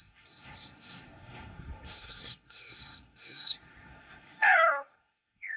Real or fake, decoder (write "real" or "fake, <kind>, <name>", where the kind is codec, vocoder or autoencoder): fake, codec, SNAC